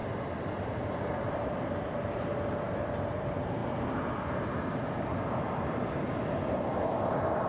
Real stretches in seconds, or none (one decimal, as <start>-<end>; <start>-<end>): 0.0-7.5